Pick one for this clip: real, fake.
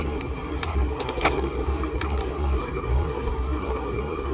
fake